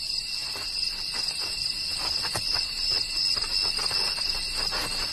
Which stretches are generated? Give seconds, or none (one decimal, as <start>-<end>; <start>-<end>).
none